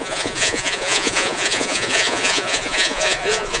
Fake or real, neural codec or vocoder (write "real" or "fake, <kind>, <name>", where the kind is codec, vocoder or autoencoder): fake, vocoder, Vocos